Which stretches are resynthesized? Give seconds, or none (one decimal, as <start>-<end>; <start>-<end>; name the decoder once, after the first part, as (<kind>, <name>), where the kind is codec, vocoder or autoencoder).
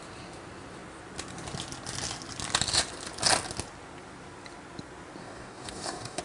5.2-6.2 (codec, DAC)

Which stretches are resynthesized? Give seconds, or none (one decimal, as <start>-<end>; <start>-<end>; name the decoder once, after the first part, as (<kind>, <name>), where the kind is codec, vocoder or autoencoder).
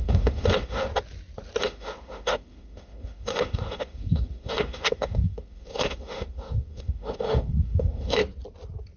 0.0-0.9 (autoencoder, DAC-VAE); 1.6-8.2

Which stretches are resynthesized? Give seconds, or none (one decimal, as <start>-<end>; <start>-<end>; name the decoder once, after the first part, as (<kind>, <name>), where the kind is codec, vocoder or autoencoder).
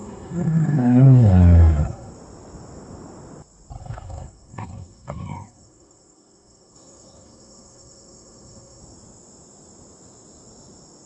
0.0-2.1 (codec, SNAC); 3.8-8.8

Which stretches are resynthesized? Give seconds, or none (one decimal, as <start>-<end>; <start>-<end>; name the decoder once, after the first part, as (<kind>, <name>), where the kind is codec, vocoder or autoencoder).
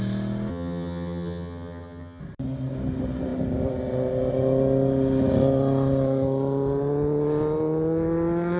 0.5-2.2 (vocoder, HiFi-GAN)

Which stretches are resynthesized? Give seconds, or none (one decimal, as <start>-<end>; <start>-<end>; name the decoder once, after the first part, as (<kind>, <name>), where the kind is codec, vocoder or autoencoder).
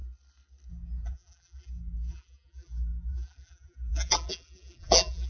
0.7-5.3 (vocoder, BigVGAN v2)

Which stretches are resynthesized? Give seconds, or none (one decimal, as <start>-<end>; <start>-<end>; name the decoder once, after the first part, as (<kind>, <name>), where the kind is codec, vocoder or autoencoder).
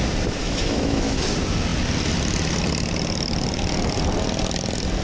0.4-1.2 (autoencoder, DAC-VAE)